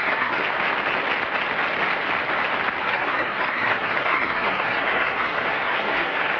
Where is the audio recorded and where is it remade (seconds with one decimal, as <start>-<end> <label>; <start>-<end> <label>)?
0.0-0.4 remade; 0.4-2.8 recorded; 2.8-6.4 remade